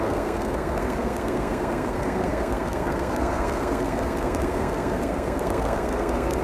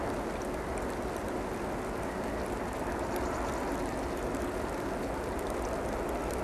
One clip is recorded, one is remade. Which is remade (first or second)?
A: first